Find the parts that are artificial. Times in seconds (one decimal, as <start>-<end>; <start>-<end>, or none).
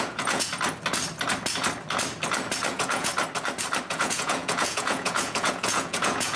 0.0-0.5; 2.7-3.1; 3.9-6.4